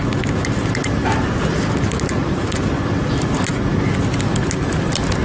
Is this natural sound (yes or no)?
yes